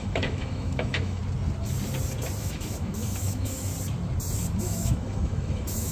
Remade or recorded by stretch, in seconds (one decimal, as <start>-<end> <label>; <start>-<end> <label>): 0.0-1.2 remade; 1.2-2.4 recorded; 2.4-3.7 remade; 3.7-4.6 recorded; 4.6-5.9 remade